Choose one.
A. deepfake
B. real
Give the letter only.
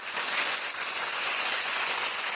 A